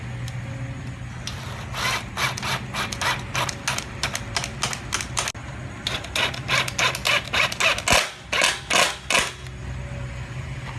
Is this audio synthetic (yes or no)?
no